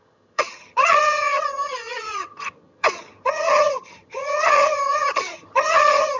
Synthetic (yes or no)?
yes